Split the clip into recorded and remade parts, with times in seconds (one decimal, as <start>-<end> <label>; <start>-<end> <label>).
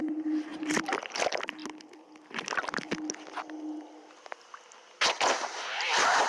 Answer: 0.0-1.6 remade; 1.6-5.4 recorded; 5.4-6.3 remade